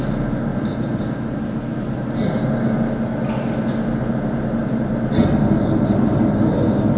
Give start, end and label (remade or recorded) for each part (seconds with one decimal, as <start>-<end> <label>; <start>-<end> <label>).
0.0-0.5 recorded; 0.5-1.0 remade; 1.0-4.6 recorded; 4.6-5.3 remade; 5.3-7.0 recorded